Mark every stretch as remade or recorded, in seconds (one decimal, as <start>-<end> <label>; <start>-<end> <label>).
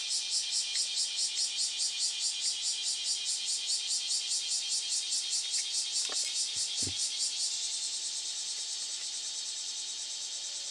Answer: 0.0-9.0 recorded; 9.0-9.7 remade; 9.7-10.7 recorded